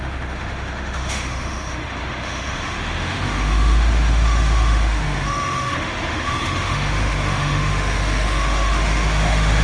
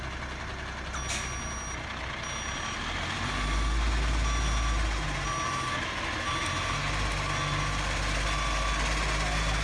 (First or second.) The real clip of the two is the second